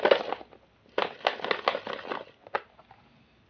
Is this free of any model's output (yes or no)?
yes